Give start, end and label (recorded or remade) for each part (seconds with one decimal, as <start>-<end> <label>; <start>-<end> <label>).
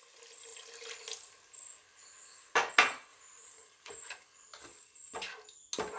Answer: 0.0-3.1 recorded; 3.1-4.1 remade; 4.1-6.0 recorded